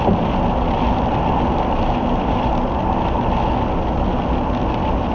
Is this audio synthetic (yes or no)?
no